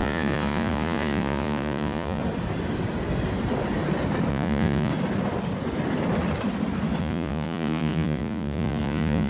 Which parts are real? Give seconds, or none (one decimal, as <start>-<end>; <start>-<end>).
2.2-4.3; 4.9-7.0